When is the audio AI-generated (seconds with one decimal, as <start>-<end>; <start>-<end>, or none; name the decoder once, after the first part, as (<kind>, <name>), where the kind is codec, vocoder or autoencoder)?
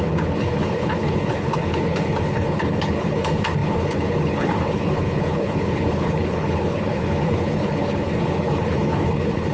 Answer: 0.0-9.5 (codec, HILCodec)